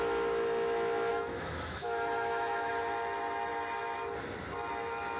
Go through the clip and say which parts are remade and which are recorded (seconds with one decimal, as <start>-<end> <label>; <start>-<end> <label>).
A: 0.0-1.1 recorded; 1.1-2.7 remade; 2.7-5.2 recorded